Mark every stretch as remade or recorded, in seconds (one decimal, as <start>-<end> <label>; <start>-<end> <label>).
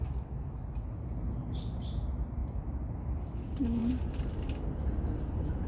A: 0.0-5.7 recorded